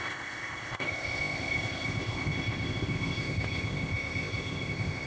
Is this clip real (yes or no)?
no